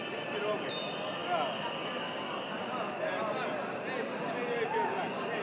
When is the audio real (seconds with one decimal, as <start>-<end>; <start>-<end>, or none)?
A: 0.0-5.4